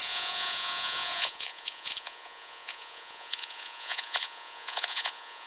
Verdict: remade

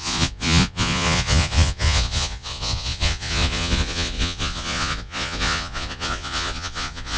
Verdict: remade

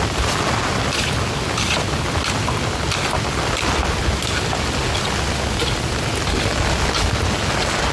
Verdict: recorded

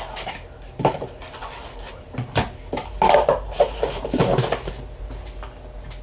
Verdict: recorded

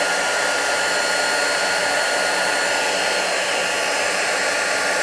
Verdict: recorded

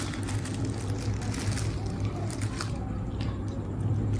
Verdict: recorded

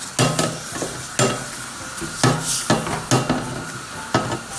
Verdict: recorded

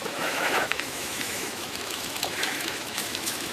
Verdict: remade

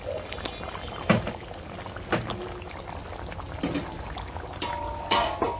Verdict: recorded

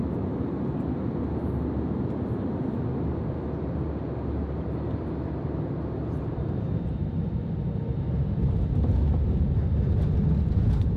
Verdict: recorded